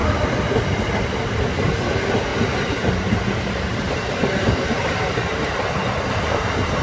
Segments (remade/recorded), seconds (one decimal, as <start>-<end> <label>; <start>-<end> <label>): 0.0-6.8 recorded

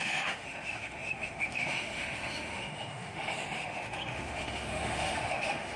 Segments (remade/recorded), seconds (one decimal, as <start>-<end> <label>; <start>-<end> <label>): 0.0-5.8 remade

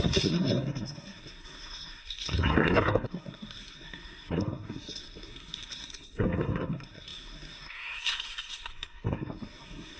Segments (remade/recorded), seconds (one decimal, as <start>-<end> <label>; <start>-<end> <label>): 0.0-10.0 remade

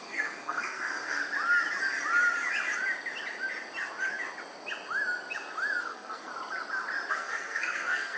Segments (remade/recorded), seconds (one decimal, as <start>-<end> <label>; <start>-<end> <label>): 0.0-1.2 remade; 1.2-5.8 recorded; 5.8-6.3 remade; 6.3-7.1 recorded; 7.1-8.2 remade